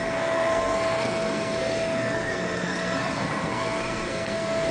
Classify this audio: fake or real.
fake